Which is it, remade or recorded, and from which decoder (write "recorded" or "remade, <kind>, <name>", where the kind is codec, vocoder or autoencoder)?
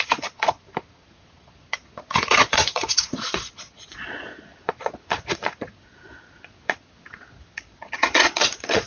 remade, vocoder, Vocos